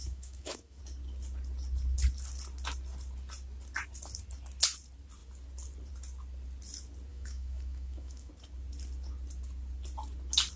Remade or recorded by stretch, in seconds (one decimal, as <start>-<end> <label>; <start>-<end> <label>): 0.0-0.8 remade; 0.8-7.1 recorded; 7.1-8.3 remade; 8.3-10.6 recorded